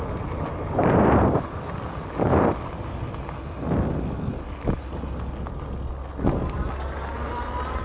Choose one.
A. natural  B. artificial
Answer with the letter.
A